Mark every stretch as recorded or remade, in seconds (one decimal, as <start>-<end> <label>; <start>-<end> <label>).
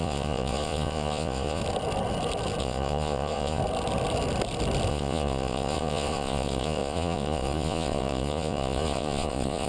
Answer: 0.0-1.6 remade; 1.6-2.6 recorded; 2.6-3.6 remade; 3.6-4.9 recorded; 4.9-9.7 remade